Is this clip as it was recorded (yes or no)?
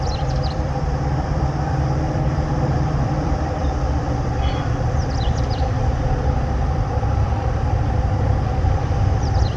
no